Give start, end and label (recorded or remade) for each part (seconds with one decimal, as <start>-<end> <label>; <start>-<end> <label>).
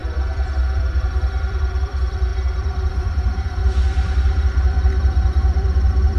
0.0-6.2 remade